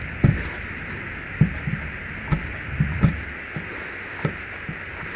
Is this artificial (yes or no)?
no